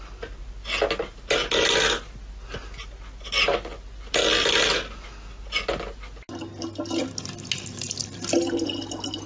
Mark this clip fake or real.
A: real